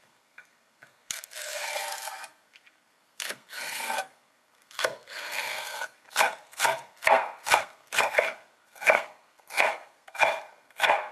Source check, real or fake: fake